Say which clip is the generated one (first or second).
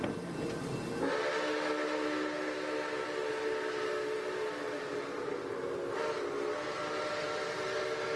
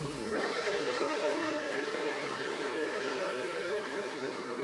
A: second